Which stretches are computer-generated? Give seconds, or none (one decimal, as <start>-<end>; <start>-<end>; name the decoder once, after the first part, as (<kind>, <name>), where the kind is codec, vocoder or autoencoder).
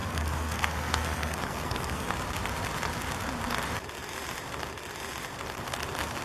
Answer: 0.0-2.1 (codec, SNAC)